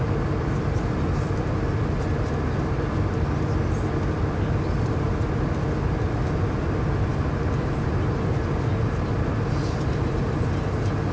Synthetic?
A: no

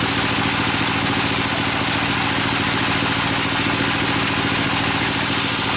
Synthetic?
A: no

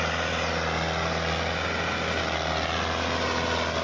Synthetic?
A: no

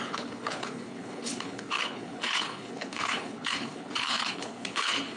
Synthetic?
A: yes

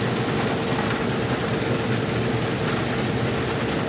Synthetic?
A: no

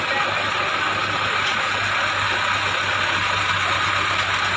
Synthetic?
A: no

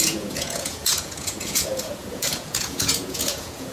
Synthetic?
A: yes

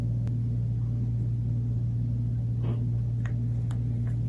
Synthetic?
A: no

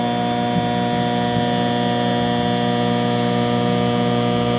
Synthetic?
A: no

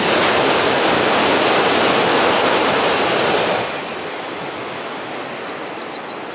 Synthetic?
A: no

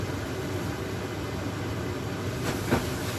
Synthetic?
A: no